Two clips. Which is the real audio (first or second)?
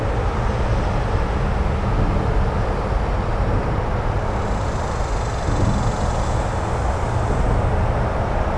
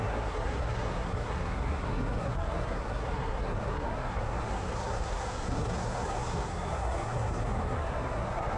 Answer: first